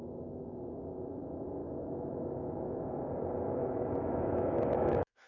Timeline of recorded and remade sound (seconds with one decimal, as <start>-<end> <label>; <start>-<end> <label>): 0.0-1.6 recorded; 1.6-3.0 remade; 3.0-3.6 recorded; 3.6-5.3 remade